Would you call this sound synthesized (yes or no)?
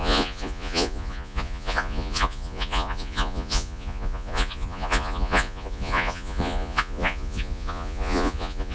yes